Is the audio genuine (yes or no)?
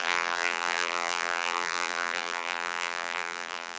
no